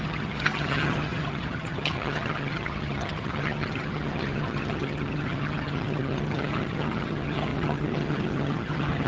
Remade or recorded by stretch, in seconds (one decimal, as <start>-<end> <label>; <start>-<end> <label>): 0.0-9.1 remade